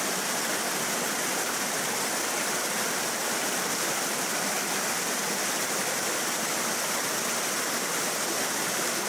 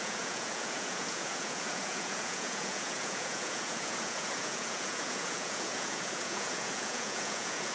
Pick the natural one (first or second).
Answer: first